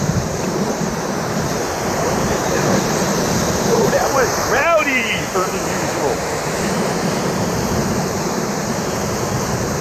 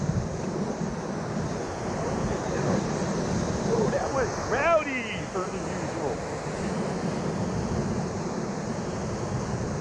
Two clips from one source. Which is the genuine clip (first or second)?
second